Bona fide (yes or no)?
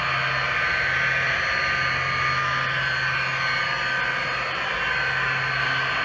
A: yes